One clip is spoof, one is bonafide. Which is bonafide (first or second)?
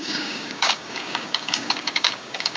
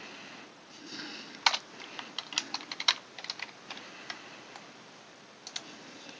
second